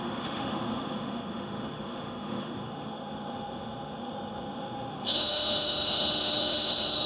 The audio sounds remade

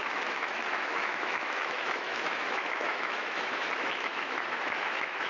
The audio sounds remade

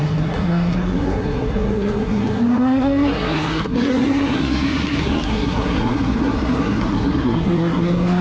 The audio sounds remade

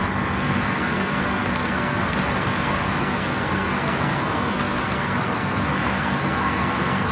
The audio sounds remade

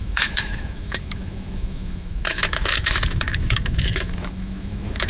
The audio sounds remade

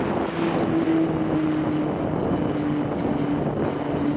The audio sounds recorded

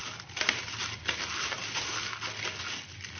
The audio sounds recorded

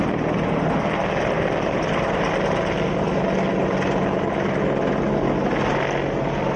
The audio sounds recorded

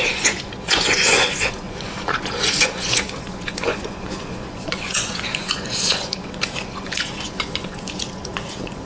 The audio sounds remade